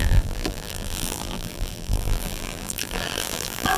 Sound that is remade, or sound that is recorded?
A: remade